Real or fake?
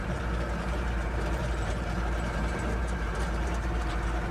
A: fake